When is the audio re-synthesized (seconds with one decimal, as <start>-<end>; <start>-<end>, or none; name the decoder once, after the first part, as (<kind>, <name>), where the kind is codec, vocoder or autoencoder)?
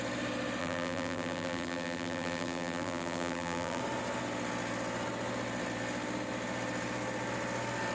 0.6-3.8 (vocoder, BigVGAN v2)